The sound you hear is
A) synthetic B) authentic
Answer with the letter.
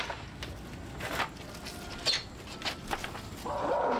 B